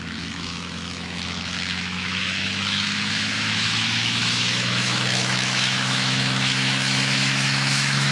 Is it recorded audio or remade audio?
remade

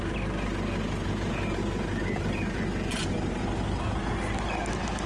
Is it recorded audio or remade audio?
recorded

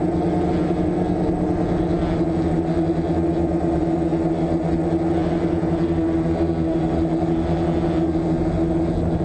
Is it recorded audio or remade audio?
recorded